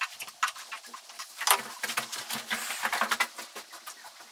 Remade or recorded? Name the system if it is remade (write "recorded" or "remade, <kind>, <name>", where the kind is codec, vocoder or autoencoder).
recorded